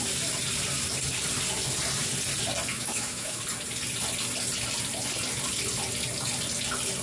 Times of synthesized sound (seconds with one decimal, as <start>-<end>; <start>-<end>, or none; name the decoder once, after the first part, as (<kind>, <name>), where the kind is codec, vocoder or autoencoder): 2.7-3.4 (autoencoder, DAC-VAE)